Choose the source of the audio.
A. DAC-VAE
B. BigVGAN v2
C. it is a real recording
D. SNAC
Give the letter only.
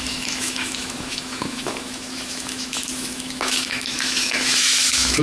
A